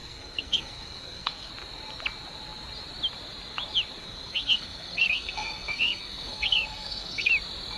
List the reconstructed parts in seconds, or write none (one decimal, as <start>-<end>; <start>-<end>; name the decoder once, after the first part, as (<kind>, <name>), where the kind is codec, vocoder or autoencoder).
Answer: 0.0-1.5 (codec, SNAC); 4.0-7.3

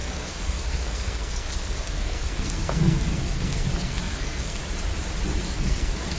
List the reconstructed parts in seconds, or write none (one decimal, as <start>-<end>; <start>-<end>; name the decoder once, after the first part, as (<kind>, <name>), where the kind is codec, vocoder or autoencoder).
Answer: 0.0-4.6 (codec, SNAC); 5.4-6.2

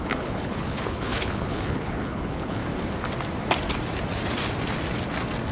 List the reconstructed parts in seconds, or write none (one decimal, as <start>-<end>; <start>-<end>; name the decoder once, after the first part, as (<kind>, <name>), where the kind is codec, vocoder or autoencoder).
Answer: 0.0-2.6 (codec, HILCodec)

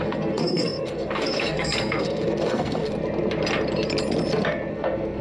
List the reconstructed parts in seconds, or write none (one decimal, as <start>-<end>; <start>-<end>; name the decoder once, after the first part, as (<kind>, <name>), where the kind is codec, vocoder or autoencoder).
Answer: 0.0-3.0 (codec, SNAC); 4.7-5.2

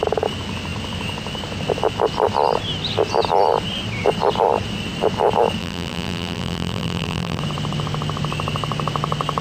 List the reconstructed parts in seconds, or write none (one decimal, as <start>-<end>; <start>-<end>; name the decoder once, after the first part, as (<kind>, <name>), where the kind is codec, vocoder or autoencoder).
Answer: 5.6-7.4 (vocoder, BigVGAN v2)

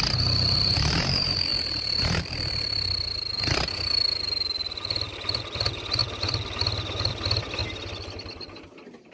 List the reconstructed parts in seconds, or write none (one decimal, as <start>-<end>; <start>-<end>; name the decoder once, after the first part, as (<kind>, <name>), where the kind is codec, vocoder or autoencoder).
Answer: 0.0-9.1 (vocoder, BigVGAN v2)